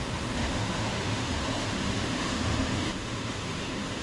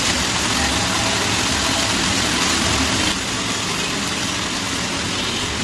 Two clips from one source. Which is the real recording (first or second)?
second